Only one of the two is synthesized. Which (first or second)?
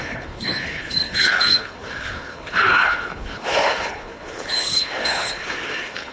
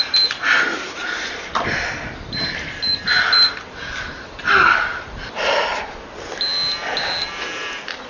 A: first